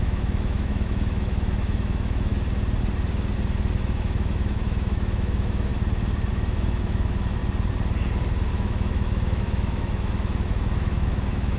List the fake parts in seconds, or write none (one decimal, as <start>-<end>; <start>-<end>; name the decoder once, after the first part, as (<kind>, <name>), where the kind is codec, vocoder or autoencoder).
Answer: 0.0-2.3 (autoencoder, DAC-VAE); 3.8-5.7; 6.3-7.4; 8.5-11.6